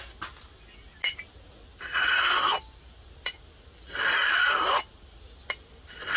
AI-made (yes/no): no